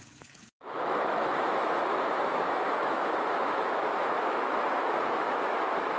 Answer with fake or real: fake